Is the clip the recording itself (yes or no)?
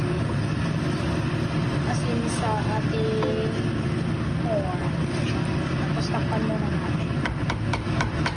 yes